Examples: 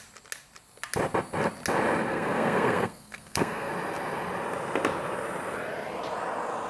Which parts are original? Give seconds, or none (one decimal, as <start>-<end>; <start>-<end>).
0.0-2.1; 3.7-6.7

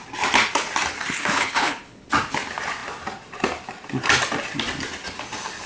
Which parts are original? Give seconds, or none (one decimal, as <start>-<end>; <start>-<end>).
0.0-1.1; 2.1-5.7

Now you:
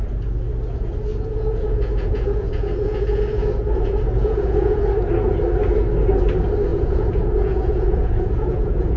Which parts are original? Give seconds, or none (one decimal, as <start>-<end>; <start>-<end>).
0.0-1.1; 4.8-6.7

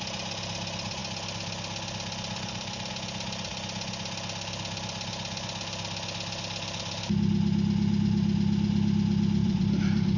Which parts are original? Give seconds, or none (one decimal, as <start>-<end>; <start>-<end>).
0.0-9.4